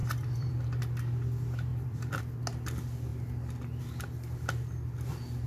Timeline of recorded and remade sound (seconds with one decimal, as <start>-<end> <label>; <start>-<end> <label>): 0.0-0.8 remade; 0.8-1.7 recorded; 1.7-2.2 remade; 2.2-5.5 recorded